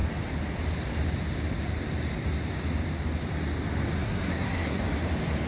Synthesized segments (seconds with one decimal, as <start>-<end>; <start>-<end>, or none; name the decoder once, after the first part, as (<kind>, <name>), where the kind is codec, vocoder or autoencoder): 4.0-4.8 (codec, SNAC)

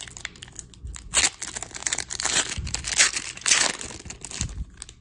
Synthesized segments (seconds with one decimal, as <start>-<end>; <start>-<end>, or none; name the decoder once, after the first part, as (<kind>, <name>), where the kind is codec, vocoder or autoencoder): 1.8-2.4 (vocoder, BigVGAN v2)

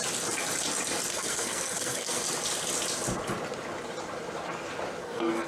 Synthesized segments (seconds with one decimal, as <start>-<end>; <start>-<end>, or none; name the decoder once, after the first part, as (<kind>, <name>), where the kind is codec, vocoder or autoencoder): 1.1-2.2 (codec, SNAC); 5.0-5.5

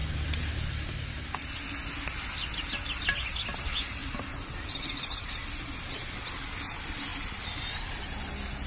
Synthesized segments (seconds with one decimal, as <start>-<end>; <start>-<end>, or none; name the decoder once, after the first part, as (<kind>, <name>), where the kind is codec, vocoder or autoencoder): 0.0-1.2 (vocoder, BigVGAN v2); 4.0-6.1; 7.1-8.0

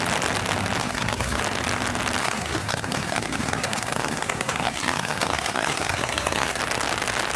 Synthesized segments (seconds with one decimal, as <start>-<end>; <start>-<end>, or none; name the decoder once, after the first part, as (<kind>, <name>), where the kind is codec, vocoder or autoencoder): 0.8-1.4 (codec, SNAC); 2.2-6.6

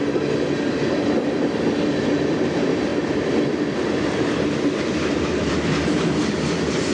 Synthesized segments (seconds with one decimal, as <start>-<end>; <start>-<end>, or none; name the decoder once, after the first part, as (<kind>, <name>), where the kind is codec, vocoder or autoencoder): 2.9-5.2 (vocoder, BigVGAN v2)

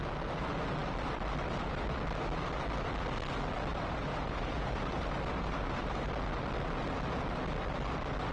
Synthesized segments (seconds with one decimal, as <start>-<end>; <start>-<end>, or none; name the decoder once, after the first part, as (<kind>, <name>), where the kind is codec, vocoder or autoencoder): 3.7-6.1 (vocoder, BigVGAN v2)

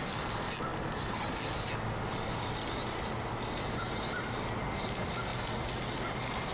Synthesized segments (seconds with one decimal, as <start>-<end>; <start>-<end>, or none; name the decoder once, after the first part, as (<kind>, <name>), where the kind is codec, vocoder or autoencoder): none